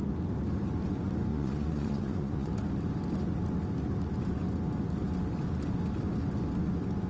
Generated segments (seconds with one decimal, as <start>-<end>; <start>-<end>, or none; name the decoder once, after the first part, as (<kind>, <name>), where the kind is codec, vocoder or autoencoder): 1.3-2.5 (vocoder, Vocos)